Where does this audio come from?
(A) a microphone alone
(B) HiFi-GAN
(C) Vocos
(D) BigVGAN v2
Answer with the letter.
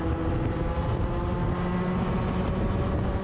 A